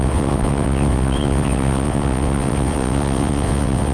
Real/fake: fake